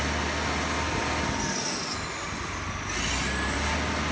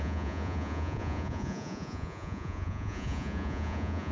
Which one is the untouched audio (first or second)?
first